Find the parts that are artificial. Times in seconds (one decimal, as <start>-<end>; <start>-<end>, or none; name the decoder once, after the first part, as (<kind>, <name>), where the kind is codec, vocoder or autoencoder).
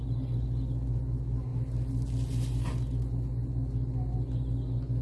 none